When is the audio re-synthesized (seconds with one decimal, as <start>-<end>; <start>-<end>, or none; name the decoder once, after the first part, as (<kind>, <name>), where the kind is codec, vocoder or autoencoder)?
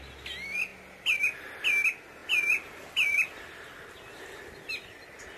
none